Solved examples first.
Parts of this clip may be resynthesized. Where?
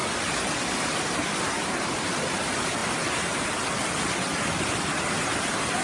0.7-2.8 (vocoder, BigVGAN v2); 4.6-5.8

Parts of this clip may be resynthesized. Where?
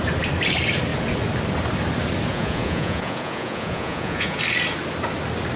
2.3-4.4 (vocoder, Vocos)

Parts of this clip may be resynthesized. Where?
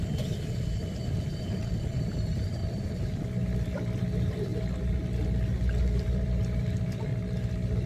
0.0-2.6 (vocoder, BigVGAN v2); 3.3-4.5; 6.0-7.1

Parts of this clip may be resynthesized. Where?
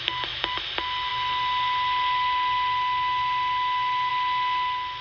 none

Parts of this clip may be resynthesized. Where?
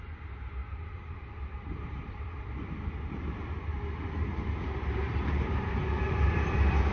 0.6-2.1 (vocoder, BigVGAN v2); 3.7-5.9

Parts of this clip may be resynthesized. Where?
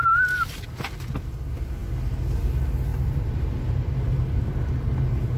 2.9-4.5 (vocoder, BigVGAN v2)